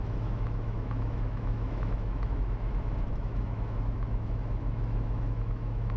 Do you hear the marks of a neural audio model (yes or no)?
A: yes